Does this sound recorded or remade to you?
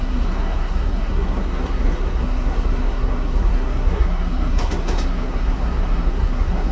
remade